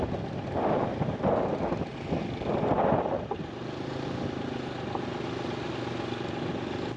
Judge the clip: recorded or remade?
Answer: recorded